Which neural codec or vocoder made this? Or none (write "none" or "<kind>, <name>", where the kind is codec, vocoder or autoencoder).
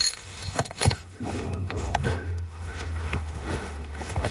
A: autoencoder, DAC-VAE